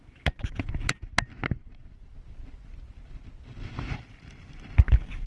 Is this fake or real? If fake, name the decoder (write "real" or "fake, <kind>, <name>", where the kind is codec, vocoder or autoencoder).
real